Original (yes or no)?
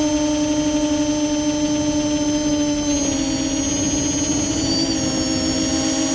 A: yes